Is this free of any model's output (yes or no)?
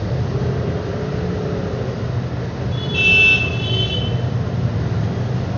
yes